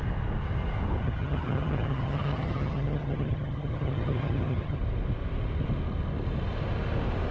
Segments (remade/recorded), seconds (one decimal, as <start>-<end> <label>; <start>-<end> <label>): 0.0-1.0 recorded; 1.0-4.8 remade; 4.8-7.3 recorded